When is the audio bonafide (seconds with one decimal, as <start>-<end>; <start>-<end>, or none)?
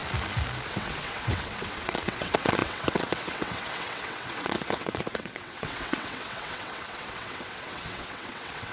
0.0-0.7